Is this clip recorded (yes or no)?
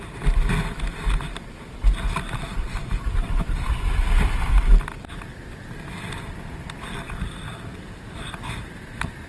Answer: yes